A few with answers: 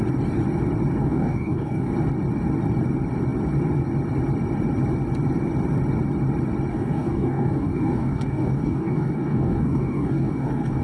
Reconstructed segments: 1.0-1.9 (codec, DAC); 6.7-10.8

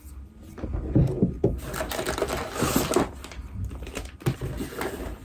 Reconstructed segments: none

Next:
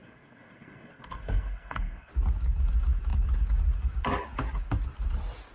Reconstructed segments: 0.0-2.1 (codec, SNAC)

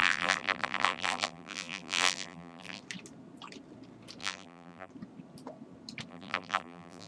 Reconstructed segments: 0.0-2.8 (vocoder, BigVGAN v2); 4.2-4.9; 6.1-7.1

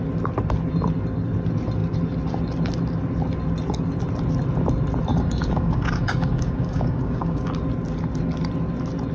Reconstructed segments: 5.1-7.5 (codec, DAC)

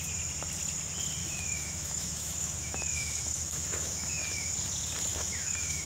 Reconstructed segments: 1.2-4.5 (autoencoder, DAC-VAE); 5.1-5.9